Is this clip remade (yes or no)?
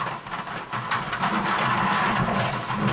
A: no